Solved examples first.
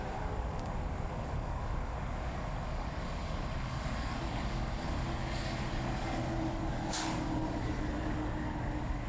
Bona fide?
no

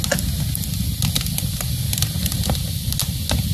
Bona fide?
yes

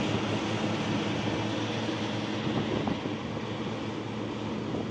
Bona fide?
yes